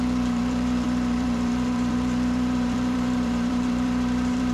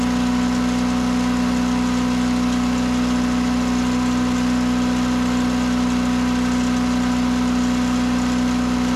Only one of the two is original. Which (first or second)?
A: second